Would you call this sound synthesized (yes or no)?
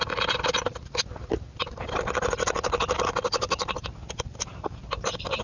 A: yes